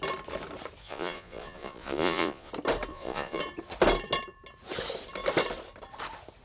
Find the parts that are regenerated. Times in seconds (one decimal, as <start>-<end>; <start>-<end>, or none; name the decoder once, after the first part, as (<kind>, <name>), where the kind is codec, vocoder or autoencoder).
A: 0.8-2.5 (vocoder, Vocos); 2.9-3.4